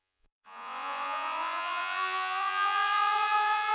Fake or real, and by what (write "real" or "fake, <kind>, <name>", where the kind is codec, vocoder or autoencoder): fake, vocoder, Vocos